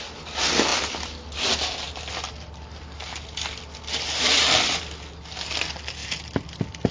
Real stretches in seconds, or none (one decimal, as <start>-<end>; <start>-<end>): 0.0-0.7; 4.8-6.0